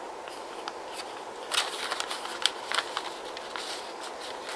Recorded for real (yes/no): yes